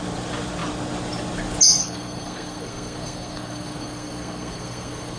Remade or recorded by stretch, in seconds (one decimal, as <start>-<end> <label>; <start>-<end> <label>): 0.0-1.8 recorded; 1.8-5.2 remade